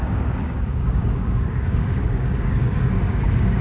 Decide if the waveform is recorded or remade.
remade